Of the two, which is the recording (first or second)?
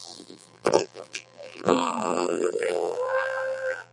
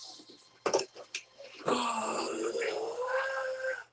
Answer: second